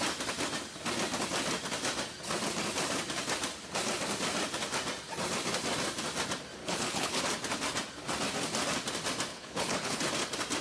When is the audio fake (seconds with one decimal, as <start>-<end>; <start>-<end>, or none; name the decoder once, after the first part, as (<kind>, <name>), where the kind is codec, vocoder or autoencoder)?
6.6-7.2 (codec, HILCodec); 9.3-10.0

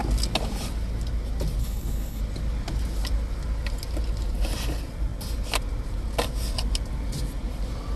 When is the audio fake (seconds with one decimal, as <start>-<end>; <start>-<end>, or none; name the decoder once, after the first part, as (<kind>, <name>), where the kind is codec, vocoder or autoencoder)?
1.6-2.2 (codec, HILCodec)

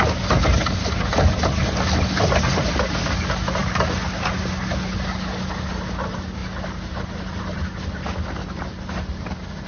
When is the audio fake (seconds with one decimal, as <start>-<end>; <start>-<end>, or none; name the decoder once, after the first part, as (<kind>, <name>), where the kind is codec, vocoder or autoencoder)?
none

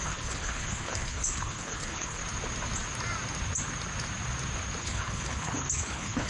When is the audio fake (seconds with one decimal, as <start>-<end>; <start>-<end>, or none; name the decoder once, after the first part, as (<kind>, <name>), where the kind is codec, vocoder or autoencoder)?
0.0-2.2 (codec, HILCodec); 4.8-6.3